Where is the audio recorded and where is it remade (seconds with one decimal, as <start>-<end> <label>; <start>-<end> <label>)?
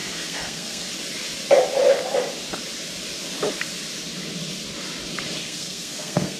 0.0-0.9 remade; 0.9-5.4 recorded; 5.4-6.4 remade